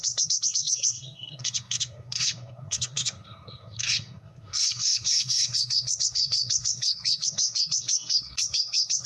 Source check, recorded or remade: remade